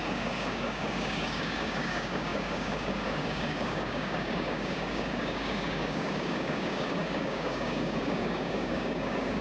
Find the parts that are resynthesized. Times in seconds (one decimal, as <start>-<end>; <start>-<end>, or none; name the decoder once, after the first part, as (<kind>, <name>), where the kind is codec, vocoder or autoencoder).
0.0-9.4 (codec, DAC)